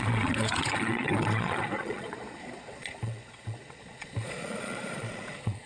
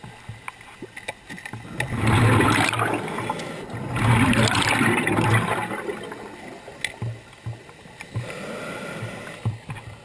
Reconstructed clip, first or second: first